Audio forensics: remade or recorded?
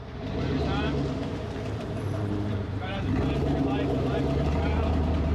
remade